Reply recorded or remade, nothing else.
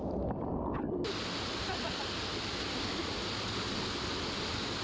recorded